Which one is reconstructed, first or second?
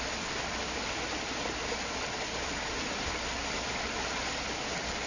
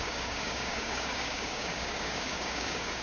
second